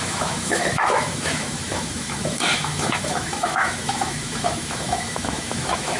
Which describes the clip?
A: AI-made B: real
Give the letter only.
A